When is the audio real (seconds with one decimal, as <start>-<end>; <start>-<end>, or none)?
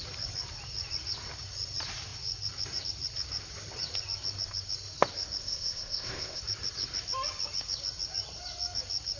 0.0-5.4; 6.4-9.2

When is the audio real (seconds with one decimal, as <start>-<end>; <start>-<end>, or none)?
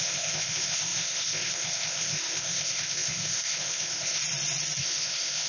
4.2-4.8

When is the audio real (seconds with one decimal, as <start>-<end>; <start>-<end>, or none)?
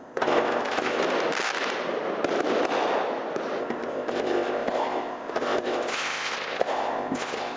1.0-3.6